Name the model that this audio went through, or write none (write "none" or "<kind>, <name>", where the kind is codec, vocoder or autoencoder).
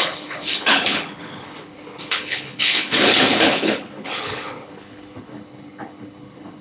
codec, HILCodec